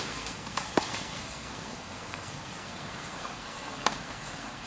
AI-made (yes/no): yes